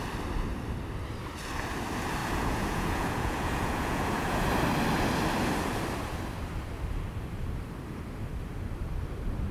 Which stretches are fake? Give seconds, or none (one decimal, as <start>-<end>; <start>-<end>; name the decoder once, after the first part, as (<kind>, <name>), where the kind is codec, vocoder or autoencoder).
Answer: 2.2-4.5 (vocoder, Vocos)